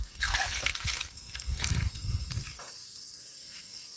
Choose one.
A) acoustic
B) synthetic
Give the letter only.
B